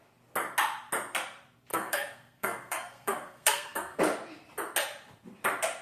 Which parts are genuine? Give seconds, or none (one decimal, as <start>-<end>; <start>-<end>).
0.0-1.7; 4.0-5.8